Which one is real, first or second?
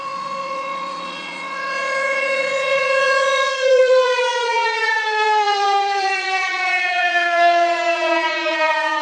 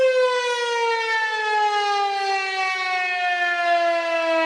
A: second